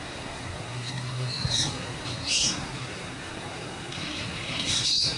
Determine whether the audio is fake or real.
fake